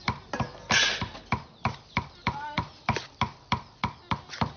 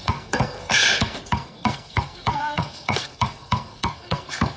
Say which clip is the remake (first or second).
second